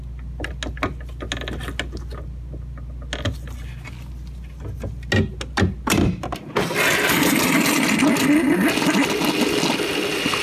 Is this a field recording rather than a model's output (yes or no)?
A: yes